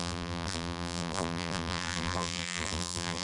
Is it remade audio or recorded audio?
remade